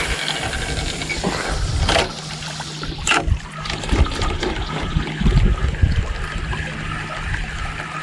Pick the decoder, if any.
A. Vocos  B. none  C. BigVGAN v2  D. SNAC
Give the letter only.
B